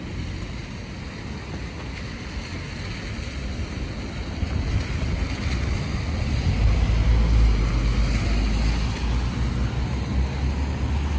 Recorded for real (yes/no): yes